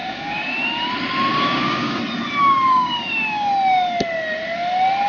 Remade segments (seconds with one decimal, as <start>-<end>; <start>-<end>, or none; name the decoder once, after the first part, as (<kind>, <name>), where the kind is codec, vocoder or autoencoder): 0.0-0.9 (codec, DAC); 1.3-2.0; 2.4-3.5